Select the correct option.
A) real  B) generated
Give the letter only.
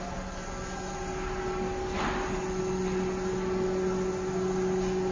A